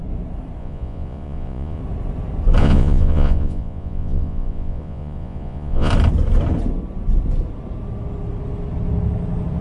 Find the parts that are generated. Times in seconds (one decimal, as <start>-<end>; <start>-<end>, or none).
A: 0.6-1.8; 2.6-5.9